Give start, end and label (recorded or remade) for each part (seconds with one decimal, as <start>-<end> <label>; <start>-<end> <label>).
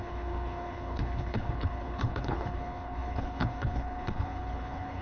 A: 0.0-5.0 remade